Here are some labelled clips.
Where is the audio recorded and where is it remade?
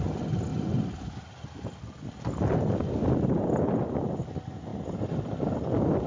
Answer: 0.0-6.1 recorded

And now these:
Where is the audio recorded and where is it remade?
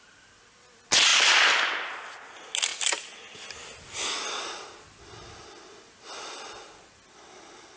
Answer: 0.0-7.8 recorded